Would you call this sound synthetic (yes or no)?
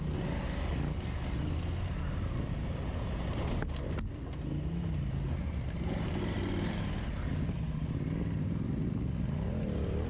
no